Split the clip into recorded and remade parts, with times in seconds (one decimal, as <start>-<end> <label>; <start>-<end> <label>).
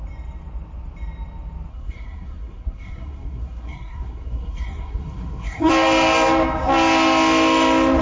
0.0-1.7 recorded; 1.7-5.7 remade; 5.7-8.0 recorded